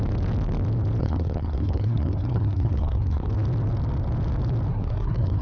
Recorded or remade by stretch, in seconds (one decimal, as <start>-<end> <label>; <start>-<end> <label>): 0.0-1.0 recorded; 1.0-3.3 remade; 3.3-4.7 recorded; 4.7-5.4 remade